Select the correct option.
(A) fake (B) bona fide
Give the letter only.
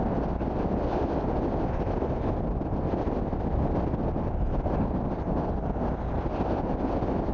B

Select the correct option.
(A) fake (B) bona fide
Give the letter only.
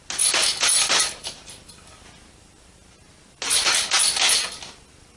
B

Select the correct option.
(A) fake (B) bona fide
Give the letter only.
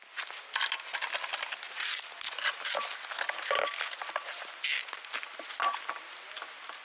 B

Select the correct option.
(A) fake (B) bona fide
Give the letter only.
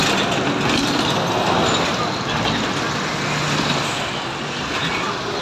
B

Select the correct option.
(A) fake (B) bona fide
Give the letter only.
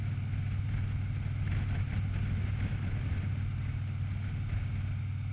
B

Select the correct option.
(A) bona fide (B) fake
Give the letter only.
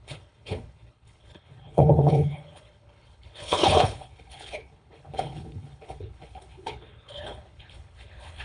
B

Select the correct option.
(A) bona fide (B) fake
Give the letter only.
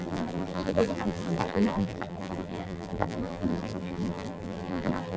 B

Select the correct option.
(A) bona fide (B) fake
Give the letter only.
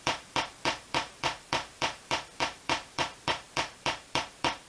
B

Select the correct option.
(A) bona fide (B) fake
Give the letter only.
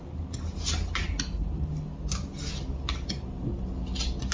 A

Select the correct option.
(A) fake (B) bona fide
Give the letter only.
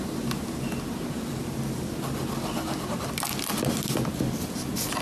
B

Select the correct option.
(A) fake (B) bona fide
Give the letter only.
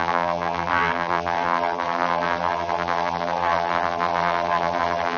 A